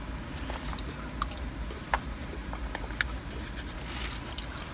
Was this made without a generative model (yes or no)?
yes